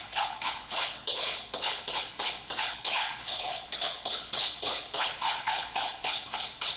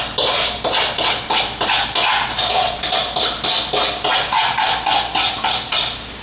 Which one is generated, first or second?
first